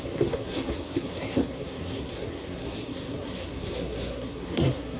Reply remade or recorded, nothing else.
remade